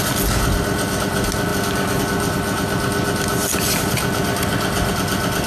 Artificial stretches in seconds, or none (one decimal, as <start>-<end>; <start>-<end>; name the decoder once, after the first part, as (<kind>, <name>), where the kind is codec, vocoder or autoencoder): none